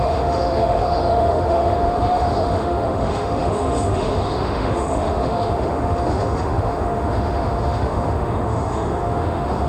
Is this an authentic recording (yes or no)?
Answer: no